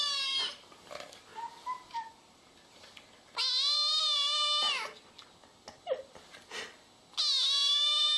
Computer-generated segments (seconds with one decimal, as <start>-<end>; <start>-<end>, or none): none